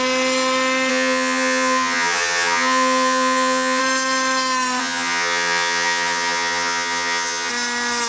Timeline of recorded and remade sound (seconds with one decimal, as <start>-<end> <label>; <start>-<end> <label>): 0.0-0.9 recorded; 0.9-3.8 remade; 3.8-4.8 recorded; 4.8-7.5 remade; 7.5-8.1 recorded